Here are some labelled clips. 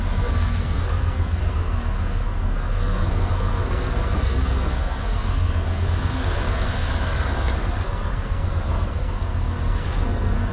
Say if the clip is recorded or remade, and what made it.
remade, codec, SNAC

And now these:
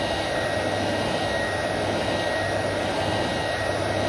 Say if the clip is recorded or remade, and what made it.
recorded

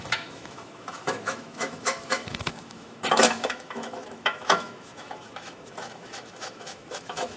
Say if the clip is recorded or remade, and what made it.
remade, autoencoder, DAC-VAE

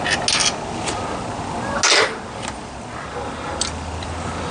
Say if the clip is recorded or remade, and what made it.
recorded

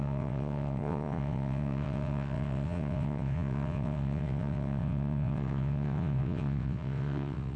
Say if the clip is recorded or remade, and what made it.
remade, vocoder, WaveNeXt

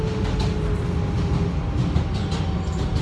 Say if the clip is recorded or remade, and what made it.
recorded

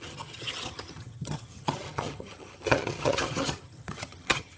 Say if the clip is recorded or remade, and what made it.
remade, vocoder, HiFi-GAN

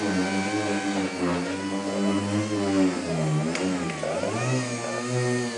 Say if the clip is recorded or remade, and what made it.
recorded